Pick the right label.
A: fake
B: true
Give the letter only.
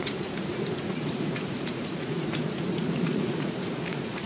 A